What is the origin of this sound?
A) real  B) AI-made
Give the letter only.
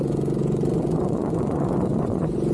B